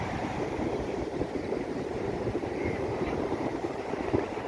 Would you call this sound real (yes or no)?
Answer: no